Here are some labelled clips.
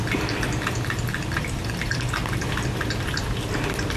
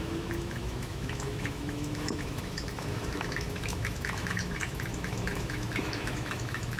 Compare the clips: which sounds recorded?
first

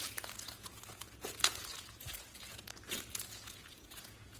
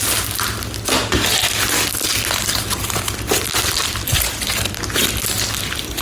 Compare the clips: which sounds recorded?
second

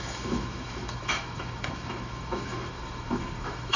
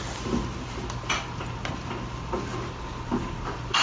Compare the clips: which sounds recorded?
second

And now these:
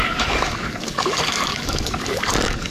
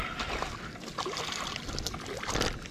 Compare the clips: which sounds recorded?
second